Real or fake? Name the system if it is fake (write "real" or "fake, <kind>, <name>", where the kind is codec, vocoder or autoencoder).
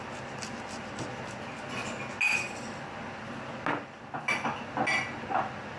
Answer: real